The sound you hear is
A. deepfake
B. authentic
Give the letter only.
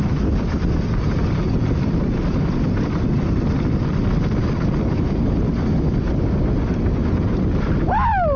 B